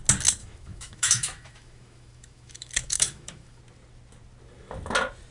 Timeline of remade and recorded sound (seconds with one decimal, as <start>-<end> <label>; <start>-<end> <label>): 0.0-0.4 recorded; 0.4-3.6 remade; 3.6-5.3 recorded